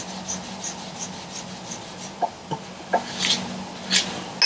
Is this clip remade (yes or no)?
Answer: no